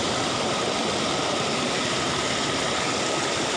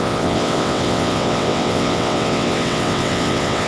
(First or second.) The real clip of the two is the first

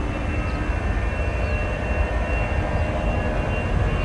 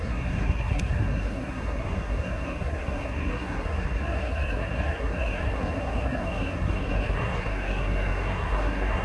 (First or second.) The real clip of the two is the first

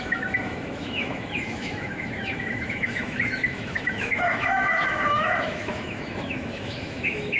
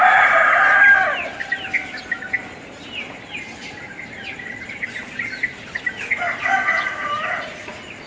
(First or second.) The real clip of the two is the second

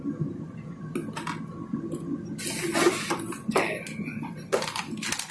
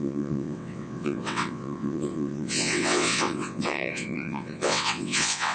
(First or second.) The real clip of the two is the first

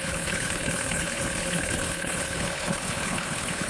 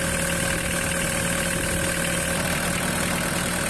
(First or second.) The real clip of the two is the second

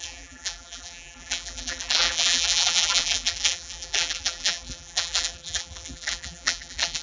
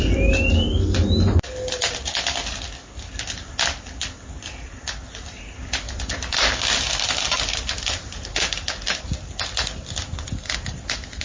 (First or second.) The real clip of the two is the second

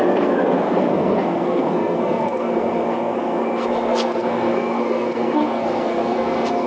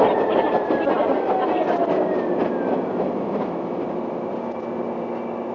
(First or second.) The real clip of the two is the second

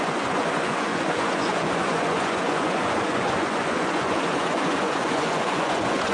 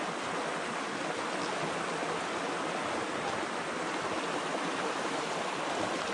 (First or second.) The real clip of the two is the second